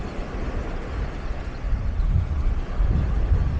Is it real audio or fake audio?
real